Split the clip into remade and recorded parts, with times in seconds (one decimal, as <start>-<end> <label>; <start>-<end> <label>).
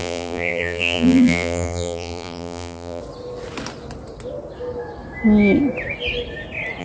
0.0-3.0 remade; 3.0-6.8 recorded